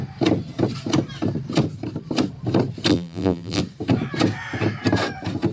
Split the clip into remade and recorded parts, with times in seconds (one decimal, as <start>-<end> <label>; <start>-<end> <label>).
0.0-2.9 recorded; 2.9-3.6 remade; 3.6-5.5 recorded